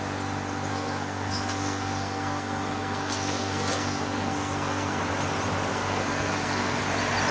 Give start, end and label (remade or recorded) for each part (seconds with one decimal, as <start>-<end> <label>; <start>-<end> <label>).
0.0-0.7 recorded; 0.7-5.0 remade; 5.0-5.7 recorded; 5.7-6.8 remade; 6.8-7.3 recorded